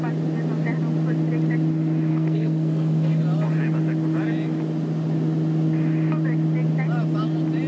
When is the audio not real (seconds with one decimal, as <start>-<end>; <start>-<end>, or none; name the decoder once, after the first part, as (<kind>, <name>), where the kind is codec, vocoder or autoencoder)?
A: 2.1-3.2 (codec, SNAC)